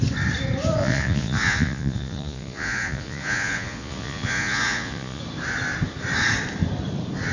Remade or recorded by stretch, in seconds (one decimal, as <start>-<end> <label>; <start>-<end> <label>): 0.0-0.8 recorded; 0.8-5.2 remade; 5.2-7.3 recorded